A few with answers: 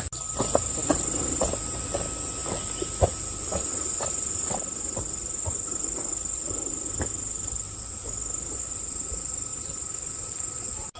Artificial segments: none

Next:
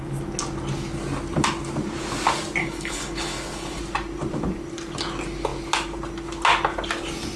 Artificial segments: 2.6-3.8 (codec, HILCodec)

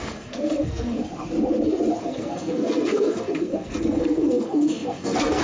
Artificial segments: 0.0-1.0 (codec, SNAC); 2.0-5.4

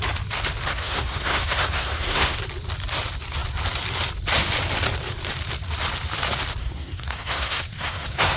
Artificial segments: 0.7-2.4 (codec, SNAC); 6.6-8.4

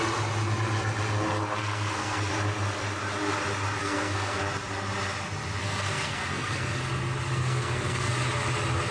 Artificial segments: 1.6-2.3 (codec, SNAC); 3.8-4.4; 5.6-6.8; 7.3-8.1

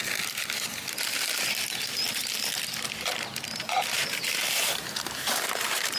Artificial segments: 3.6-6.0 (vocoder, BigVGAN v2)

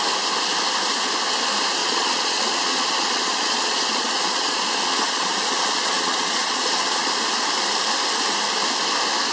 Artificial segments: 1.8-7.1 (vocoder, Vocos)

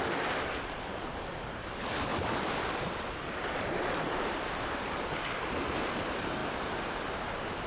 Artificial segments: 0.0-6.4 (vocoder, BigVGAN v2); 7.2-7.7